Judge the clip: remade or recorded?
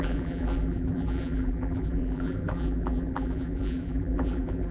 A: remade